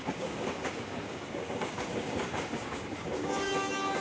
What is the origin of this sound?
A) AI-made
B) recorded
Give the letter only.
A